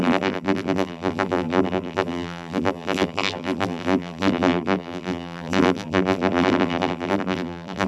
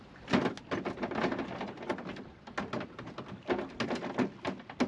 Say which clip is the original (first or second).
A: second